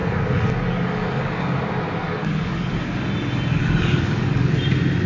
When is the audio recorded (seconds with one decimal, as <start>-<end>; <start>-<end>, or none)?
1.6-2.0; 2.7-3.6; 4.5-5.1